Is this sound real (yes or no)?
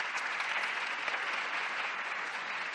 no